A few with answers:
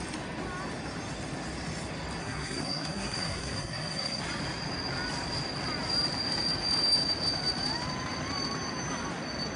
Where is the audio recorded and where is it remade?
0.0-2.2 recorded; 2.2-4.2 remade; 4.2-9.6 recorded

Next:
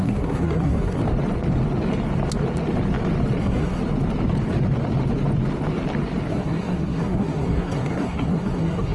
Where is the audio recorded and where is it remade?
0.0-1.0 remade; 1.0-3.4 recorded; 3.4-3.8 remade; 3.8-6.3 recorded; 6.3-8.9 remade